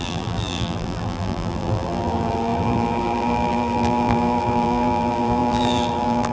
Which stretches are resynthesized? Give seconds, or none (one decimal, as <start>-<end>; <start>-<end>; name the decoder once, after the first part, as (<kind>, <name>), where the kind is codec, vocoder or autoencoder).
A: 0.0-6.3 (vocoder, BigVGAN v2)